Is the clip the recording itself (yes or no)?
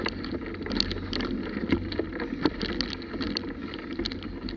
yes